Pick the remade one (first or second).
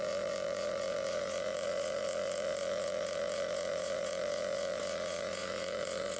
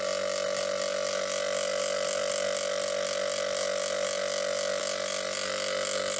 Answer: first